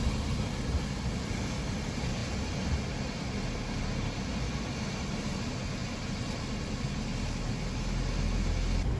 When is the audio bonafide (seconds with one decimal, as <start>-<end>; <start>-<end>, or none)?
0.0-9.0